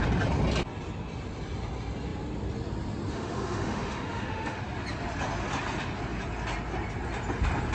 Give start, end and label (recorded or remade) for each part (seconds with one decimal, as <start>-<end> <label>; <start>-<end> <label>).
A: 0.0-3.1 recorded; 3.1-4.6 remade; 4.6-7.7 recorded